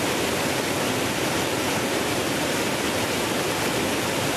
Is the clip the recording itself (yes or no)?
no